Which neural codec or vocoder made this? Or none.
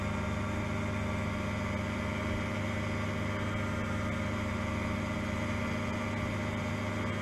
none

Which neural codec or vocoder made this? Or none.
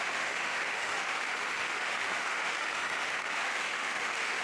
autoencoder, DAC-VAE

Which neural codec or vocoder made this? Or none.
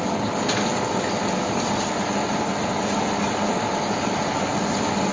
none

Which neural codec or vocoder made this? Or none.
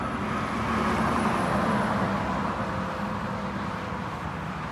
none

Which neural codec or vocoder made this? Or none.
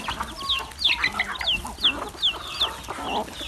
none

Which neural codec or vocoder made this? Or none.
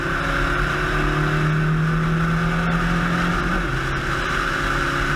none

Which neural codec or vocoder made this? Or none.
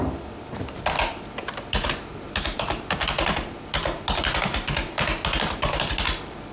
none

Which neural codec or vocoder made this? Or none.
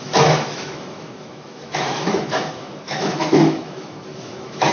autoencoder, DAC-VAE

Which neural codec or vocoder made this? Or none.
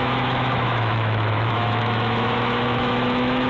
autoencoder, DAC-VAE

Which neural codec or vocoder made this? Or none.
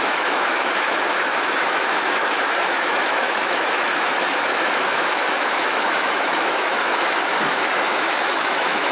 autoencoder, DAC-VAE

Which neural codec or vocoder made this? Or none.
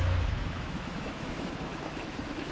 autoencoder, DAC-VAE